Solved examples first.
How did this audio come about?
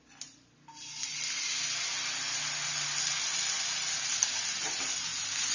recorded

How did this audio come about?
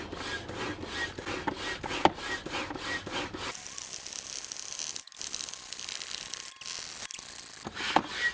recorded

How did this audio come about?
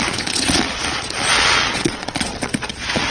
remade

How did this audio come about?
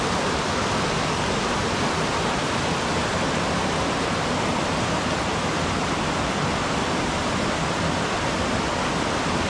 recorded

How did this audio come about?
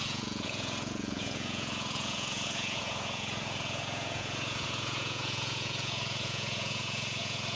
remade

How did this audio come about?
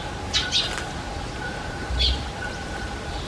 recorded